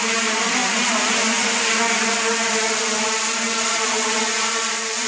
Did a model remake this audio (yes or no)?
yes